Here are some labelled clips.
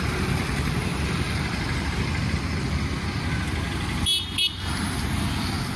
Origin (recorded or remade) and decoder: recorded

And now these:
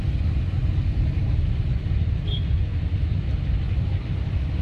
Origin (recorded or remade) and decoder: recorded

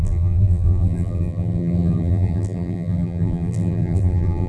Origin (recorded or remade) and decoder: remade, vocoder, BigVGAN v2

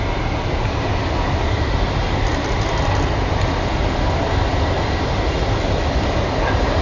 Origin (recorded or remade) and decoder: recorded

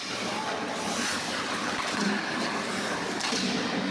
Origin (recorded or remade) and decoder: recorded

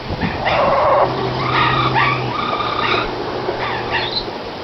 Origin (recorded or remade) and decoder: remade, vocoder, BigVGAN v2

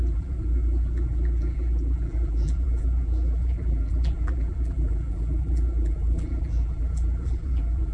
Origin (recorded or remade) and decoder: remade, vocoder, BigVGAN v2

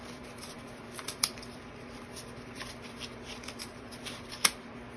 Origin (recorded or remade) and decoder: remade, vocoder, BigVGAN v2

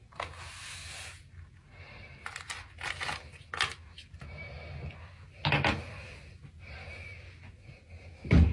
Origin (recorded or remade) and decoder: recorded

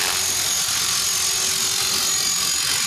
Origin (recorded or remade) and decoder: recorded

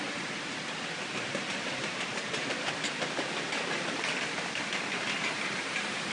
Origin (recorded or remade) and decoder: recorded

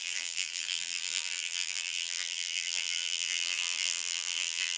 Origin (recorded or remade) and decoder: remade, vocoder, BigVGAN v2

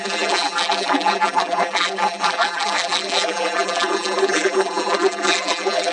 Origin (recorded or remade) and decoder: remade, vocoder, BigVGAN v2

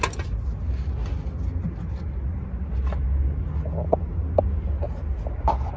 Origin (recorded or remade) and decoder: recorded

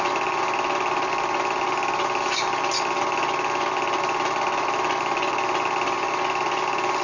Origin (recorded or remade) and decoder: recorded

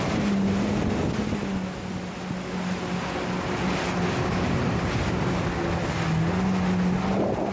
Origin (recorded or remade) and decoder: recorded